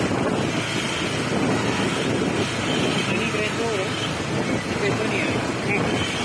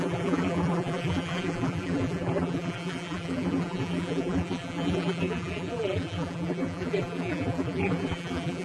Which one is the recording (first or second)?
first